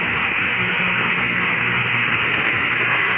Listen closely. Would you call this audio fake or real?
fake